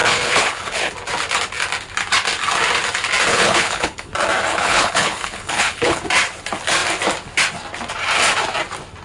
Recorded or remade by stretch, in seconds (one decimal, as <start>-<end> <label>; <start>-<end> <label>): 0.0-0.9 remade; 0.9-3.3 recorded; 3.3-4.1 remade; 4.1-4.5 recorded; 4.5-6.0 remade; 6.0-9.0 recorded